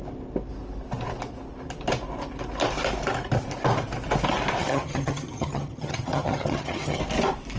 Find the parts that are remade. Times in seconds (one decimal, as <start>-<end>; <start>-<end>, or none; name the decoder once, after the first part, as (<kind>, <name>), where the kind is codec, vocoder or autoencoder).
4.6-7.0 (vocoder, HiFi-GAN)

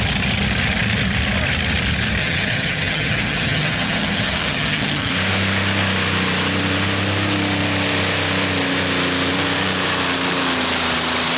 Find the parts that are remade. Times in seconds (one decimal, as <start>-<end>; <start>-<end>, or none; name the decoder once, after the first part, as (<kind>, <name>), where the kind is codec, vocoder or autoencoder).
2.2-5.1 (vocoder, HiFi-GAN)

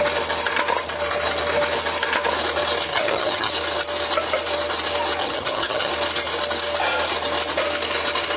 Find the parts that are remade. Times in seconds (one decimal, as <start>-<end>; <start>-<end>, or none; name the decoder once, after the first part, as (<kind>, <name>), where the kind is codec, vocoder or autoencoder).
2.9-3.5 (vocoder, HiFi-GAN); 5.2-5.9